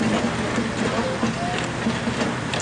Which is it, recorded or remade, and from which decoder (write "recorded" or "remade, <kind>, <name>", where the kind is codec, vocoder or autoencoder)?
recorded